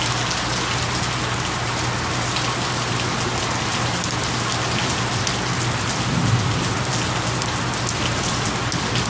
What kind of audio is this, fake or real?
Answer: real